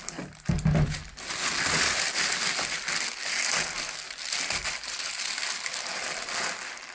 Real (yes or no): yes